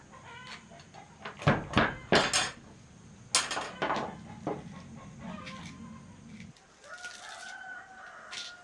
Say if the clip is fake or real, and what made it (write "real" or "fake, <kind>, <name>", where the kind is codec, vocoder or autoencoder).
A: real